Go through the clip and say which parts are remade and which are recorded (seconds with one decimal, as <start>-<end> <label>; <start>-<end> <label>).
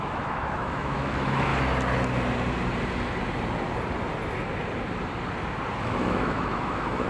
0.0-1.5 remade; 1.5-5.8 recorded; 5.8-7.1 remade